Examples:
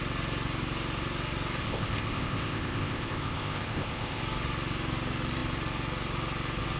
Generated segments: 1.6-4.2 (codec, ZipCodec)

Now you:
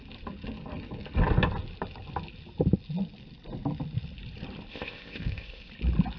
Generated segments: 4.7-5.7 (codec, ZipCodec)